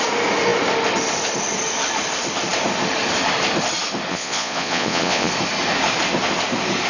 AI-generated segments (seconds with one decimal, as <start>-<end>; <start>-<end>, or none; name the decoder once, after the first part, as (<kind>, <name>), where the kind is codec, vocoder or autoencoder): 4.1-5.3 (vocoder, Vocos)